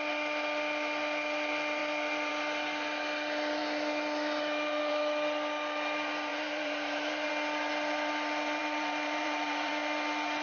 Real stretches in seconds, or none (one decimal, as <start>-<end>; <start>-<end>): 0.0-6.3; 7.3-8.6; 9.7-10.4